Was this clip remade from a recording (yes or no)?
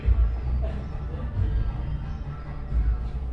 no